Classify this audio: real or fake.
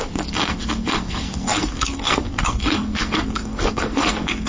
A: fake